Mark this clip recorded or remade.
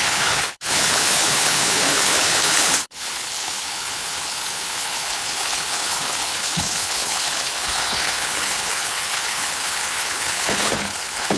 remade